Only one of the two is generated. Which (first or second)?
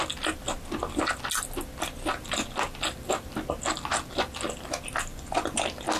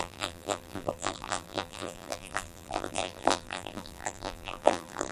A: second